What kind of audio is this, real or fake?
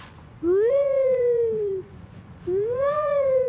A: fake